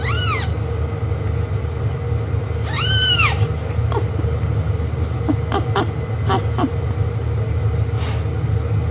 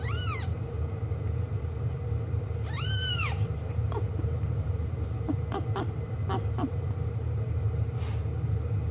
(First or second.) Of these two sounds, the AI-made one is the second